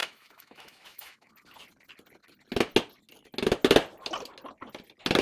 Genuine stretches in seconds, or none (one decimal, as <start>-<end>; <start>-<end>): 1.3-5.2